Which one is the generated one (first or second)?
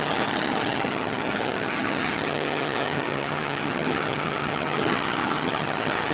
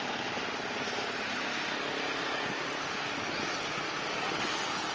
first